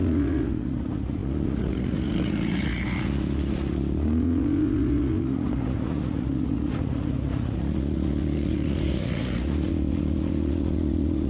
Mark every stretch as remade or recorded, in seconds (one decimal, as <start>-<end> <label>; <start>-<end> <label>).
0.0-11.3 remade